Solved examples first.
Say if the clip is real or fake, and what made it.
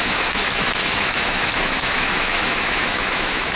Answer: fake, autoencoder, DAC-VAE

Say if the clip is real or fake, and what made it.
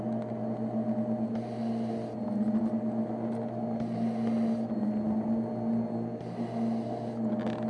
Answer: real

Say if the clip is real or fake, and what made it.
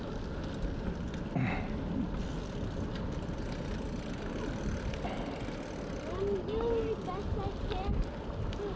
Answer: real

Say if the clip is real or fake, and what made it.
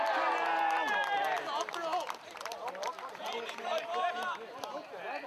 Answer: real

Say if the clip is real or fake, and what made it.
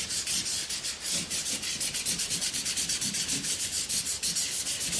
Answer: real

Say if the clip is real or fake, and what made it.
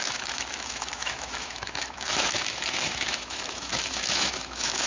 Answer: fake, autoencoder, DAC-VAE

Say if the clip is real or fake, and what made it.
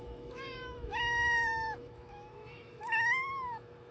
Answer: fake, autoencoder, DAC-VAE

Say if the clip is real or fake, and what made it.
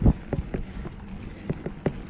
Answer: real